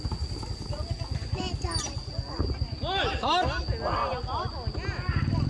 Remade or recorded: recorded